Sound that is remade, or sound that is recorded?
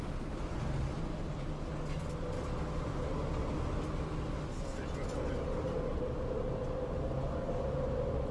recorded